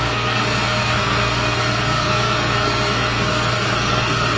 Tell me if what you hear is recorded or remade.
remade